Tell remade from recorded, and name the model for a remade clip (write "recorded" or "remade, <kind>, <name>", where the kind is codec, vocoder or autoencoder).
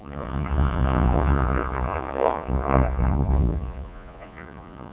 remade, vocoder, Vocos